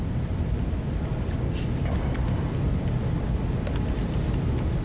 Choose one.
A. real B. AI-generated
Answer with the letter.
A